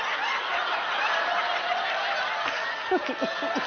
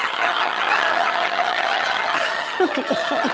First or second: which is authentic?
first